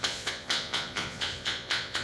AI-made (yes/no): yes